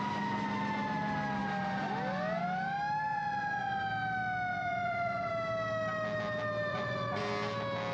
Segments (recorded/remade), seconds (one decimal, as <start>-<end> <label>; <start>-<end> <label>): 0.0-3.1 recorded; 3.1-3.8 remade; 3.8-4.5 recorded; 4.5-5.3 remade; 5.3-6.7 recorded; 6.7-7.2 remade; 7.2-7.9 recorded